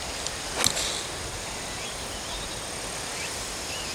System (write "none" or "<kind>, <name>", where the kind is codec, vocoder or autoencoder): none